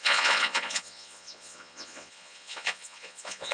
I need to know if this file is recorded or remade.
remade